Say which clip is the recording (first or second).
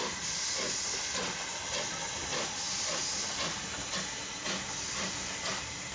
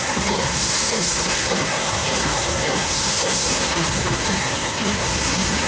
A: first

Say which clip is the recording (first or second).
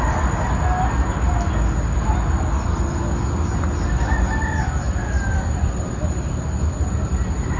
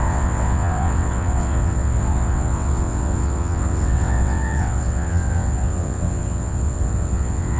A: first